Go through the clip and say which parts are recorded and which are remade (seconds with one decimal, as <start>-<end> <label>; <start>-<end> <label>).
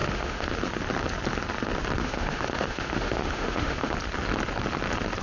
0.0-0.5 remade; 0.5-2.0 recorded; 2.0-3.9 remade; 3.9-5.2 recorded